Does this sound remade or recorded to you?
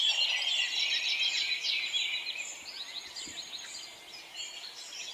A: recorded